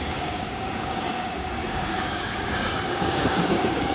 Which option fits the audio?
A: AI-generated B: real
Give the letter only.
A